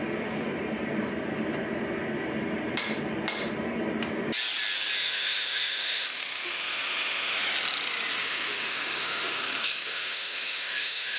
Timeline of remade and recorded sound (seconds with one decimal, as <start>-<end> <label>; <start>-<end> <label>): 0.0-5.0 recorded; 5.0-7.4 remade; 7.4-8.2 recorded; 8.2-11.2 remade